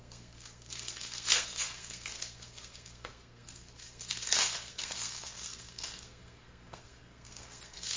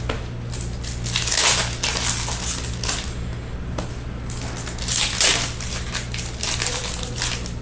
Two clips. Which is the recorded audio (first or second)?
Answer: second